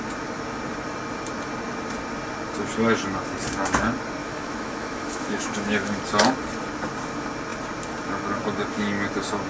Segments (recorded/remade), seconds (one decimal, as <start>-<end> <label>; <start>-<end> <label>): 0.0-4.2 recorded; 4.2-6.0 remade; 6.0-9.5 recorded